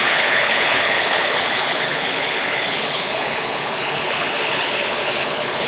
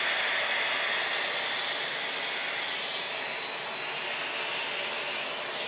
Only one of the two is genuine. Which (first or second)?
second